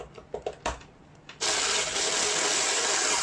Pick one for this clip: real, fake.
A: real